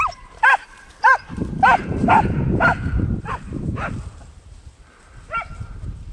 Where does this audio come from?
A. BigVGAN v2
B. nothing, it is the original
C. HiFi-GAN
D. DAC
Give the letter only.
A